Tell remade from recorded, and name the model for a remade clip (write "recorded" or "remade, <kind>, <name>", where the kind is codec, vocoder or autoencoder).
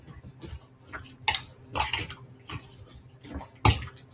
recorded